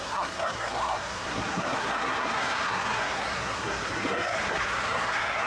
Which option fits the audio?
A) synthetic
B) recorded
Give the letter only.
A